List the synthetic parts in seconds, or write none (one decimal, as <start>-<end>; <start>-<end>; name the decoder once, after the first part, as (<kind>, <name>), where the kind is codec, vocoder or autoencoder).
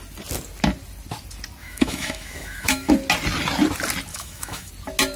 1.6-2.9 (autoencoder, DAC-VAE); 4.1-4.7